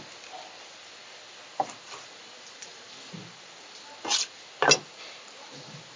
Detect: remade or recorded recorded